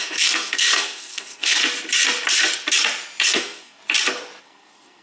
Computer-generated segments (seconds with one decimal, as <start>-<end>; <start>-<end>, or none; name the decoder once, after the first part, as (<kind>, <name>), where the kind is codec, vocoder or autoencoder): 0.0-1.6 (codec, SNAC); 3.3-3.8; 4.4-5.0